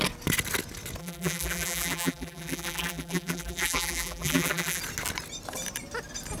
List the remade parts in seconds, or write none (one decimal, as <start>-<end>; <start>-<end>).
1.0-4.8